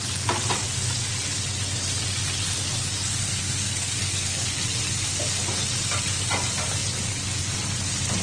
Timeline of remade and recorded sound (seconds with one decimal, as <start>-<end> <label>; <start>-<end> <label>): 0.0-3.2 recorded; 3.2-4.5 remade; 4.5-8.2 recorded